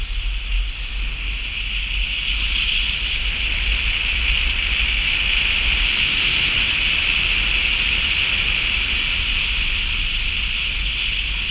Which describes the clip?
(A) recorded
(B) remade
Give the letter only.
A